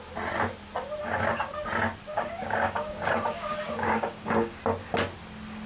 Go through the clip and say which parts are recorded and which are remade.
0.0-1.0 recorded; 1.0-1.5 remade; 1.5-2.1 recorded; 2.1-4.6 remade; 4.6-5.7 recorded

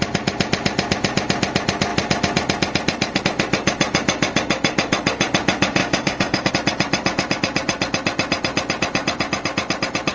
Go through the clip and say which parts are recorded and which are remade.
0.0-5.8 recorded; 5.8-6.5 remade; 6.5-10.1 recorded